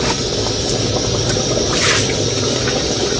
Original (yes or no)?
yes